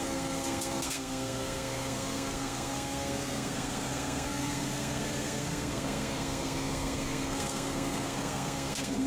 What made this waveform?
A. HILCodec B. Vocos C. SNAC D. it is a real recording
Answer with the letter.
C